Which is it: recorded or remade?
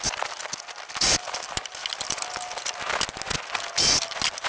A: recorded